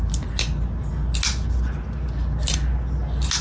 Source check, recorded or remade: recorded